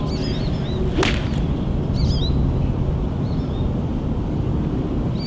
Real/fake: real